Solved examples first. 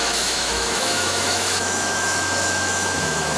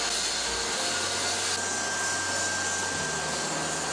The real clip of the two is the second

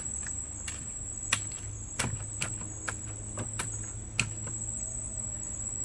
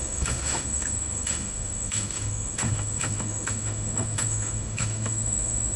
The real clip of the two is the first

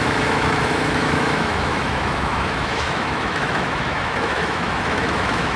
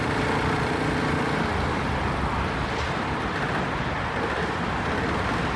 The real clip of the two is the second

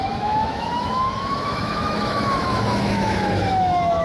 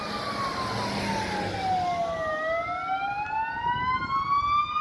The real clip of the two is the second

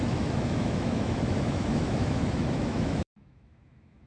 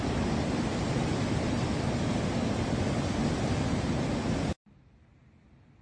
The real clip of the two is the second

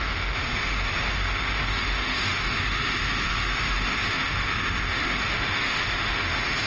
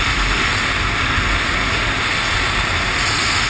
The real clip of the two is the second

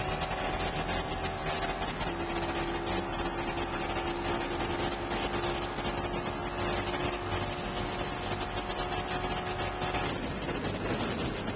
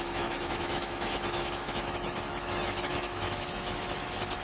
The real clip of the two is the first